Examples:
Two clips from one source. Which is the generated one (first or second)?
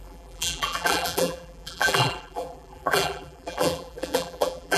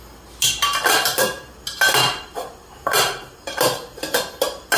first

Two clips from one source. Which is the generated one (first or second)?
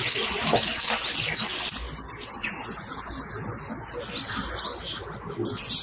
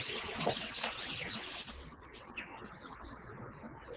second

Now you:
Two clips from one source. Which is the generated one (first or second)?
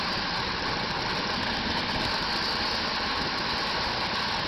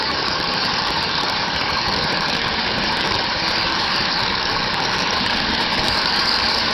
second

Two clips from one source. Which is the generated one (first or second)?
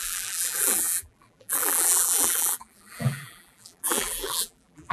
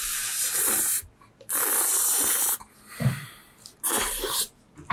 first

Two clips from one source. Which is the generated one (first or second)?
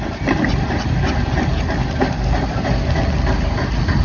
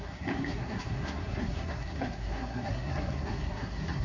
second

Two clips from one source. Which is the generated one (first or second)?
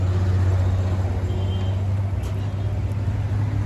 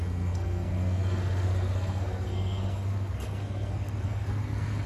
second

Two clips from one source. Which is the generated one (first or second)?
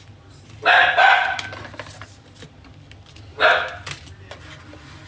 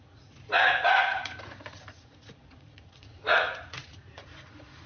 second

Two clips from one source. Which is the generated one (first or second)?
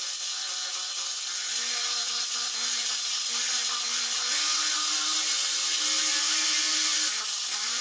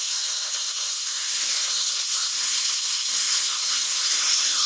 second